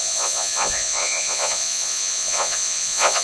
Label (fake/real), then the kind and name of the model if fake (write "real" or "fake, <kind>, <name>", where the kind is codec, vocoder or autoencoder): fake, vocoder, Vocos